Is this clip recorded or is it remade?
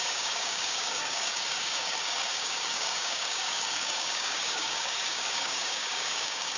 remade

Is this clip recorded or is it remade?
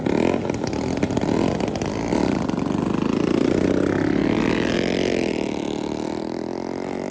recorded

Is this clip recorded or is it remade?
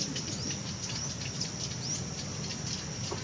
recorded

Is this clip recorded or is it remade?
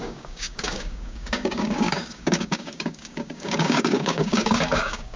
remade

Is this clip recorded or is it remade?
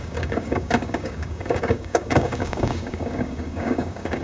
remade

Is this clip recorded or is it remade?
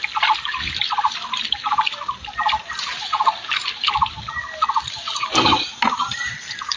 recorded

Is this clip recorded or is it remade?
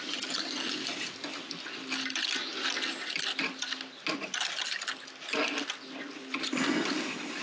recorded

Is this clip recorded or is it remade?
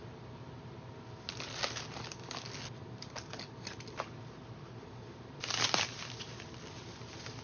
recorded